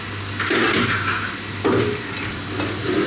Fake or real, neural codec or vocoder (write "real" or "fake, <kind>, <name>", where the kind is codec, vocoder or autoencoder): real